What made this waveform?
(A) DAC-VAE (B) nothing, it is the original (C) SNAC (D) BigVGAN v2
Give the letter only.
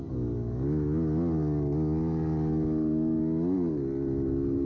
B